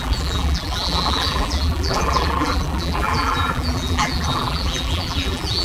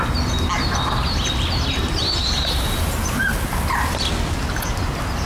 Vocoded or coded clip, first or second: first